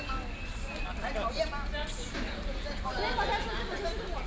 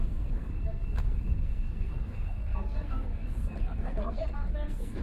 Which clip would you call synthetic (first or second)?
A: second